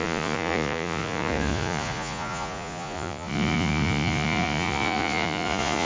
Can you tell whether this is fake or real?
fake